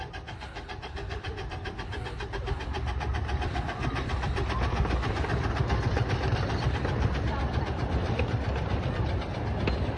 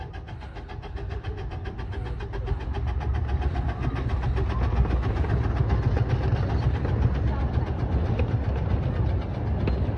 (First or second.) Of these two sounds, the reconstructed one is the first